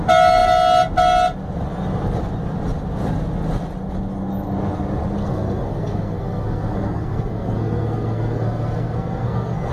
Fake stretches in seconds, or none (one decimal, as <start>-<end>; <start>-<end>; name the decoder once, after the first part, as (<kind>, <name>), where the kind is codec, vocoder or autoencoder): 5.2-9.7 (codec, SNAC)